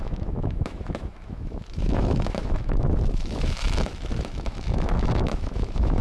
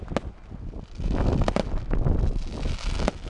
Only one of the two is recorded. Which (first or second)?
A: second